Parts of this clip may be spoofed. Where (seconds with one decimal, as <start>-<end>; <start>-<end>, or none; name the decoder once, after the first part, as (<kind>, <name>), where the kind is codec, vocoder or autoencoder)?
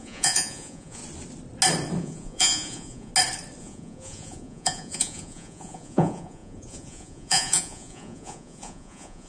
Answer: 0.0-1.0 (vocoder, Vocos); 2.0-3.1; 3.6-9.3